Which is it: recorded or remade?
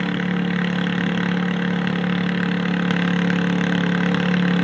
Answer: recorded